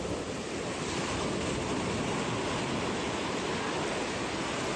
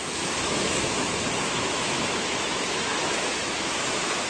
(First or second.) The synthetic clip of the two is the second